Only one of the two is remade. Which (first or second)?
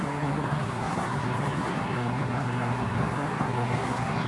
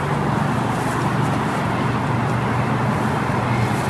first